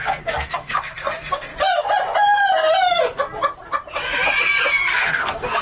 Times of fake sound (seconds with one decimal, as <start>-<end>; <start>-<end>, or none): 0.0-1.5; 4.9-5.6